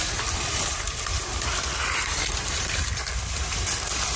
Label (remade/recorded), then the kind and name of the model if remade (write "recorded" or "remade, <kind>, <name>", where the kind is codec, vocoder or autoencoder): recorded